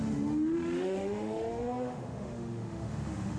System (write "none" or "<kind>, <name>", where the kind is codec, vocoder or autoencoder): autoencoder, DAC-VAE